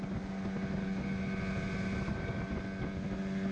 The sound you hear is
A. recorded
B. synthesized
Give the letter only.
A